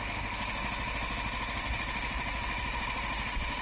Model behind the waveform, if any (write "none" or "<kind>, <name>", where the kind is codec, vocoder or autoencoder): none